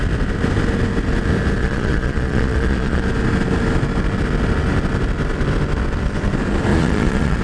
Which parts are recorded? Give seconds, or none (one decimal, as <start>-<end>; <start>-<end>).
0.0-1.6; 3.0-6.7